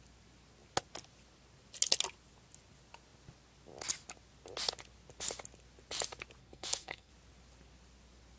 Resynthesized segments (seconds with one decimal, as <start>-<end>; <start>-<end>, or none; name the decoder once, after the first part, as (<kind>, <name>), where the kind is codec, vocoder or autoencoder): 6.4-7.1 (codec, SNAC)